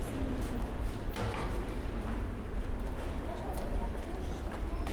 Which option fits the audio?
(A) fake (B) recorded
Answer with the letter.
A